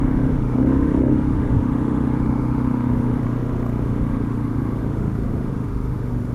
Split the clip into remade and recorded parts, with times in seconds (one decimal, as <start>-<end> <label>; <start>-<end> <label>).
0.0-6.3 remade